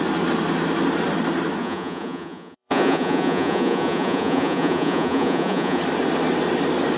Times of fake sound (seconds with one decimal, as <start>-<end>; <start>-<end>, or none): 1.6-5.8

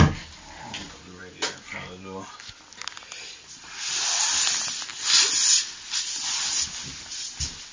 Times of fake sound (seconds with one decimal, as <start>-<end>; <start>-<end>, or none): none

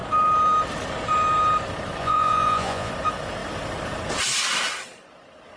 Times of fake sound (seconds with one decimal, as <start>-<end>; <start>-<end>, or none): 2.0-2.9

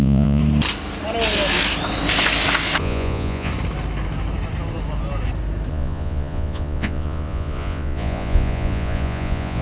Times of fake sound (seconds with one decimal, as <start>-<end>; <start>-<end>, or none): 0.0-0.4; 2.8-3.5; 5.7-9.6

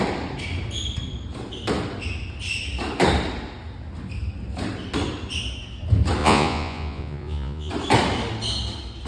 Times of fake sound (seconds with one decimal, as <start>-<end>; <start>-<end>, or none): 6.2-7.7

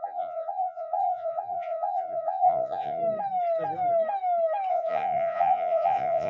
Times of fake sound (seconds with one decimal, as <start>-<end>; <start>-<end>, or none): 0.0-3.0; 4.7-6.3

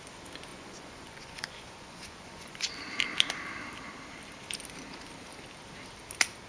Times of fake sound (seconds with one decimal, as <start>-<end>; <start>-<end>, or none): 0.5-2.7